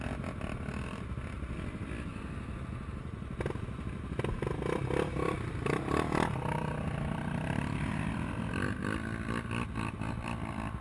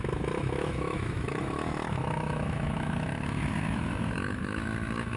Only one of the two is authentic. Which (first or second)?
first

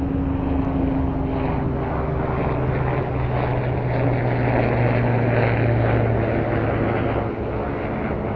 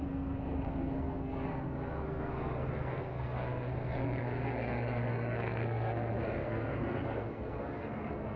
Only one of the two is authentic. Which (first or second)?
first